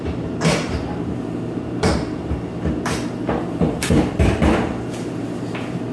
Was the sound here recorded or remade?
remade